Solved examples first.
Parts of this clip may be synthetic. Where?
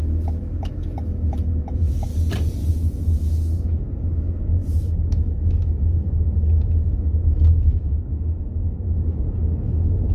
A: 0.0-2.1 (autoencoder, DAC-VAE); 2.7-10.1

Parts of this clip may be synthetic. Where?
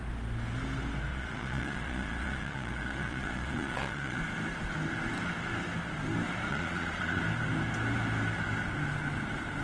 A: 1.1-4.2 (vocoder, Vocos); 6.5-7.2